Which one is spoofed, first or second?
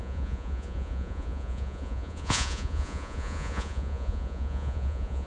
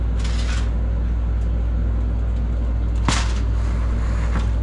first